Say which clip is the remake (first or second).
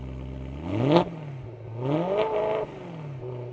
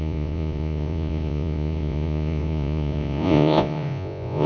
second